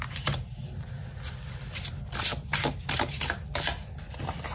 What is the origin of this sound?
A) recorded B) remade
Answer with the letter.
A